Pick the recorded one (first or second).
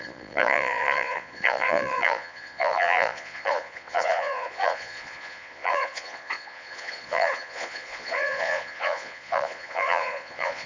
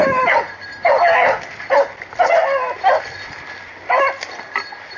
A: second